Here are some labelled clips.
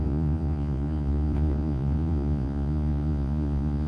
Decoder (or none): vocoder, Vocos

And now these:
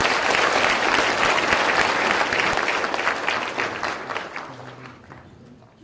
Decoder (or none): none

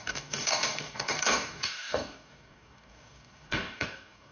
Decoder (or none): codec, DAC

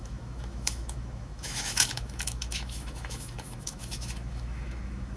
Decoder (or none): autoencoder, DAC-VAE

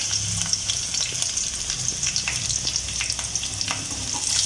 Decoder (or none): none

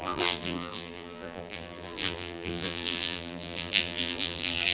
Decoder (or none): vocoder, BigVGAN v2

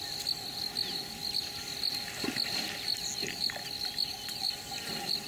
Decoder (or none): none